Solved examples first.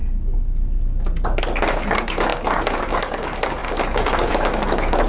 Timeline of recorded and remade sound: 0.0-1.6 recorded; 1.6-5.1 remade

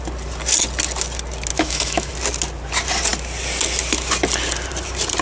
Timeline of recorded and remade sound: 0.0-1.5 recorded; 1.5-2.1 remade; 2.1-5.2 recorded

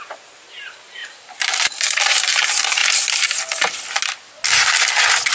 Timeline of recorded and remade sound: 0.0-1.0 recorded; 1.0-2.4 remade; 2.4-5.3 recorded

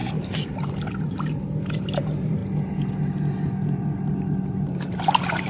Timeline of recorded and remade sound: 0.0-2.4 remade; 2.4-5.0 recorded; 5.0-5.5 remade

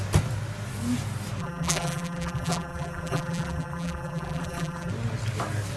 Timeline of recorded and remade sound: 0.0-1.4 recorded; 1.4-4.9 remade; 4.9-5.8 recorded

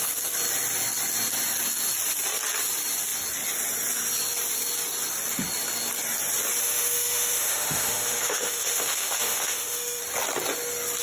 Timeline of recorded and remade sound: 0.0-6.6 recorded; 6.6-10.0 remade; 10.0-11.0 recorded

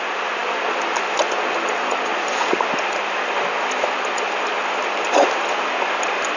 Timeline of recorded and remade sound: 0.0-6.4 recorded